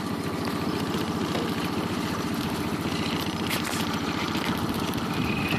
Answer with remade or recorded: remade